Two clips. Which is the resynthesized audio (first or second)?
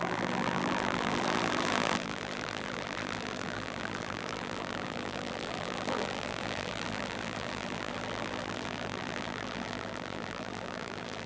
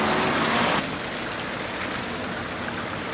first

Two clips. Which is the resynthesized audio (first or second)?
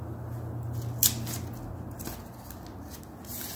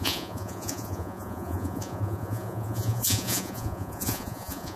second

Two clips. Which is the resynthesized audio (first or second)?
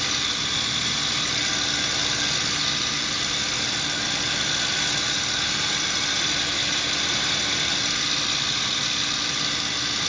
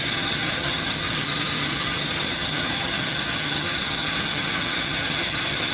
second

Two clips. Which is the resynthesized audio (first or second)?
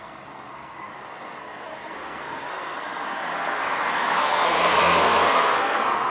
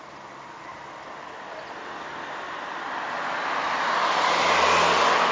first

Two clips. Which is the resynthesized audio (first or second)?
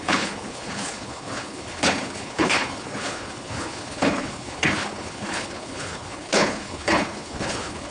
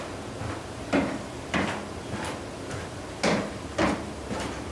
first